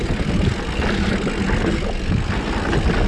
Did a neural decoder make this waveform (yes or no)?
no